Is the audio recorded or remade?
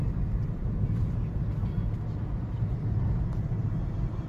recorded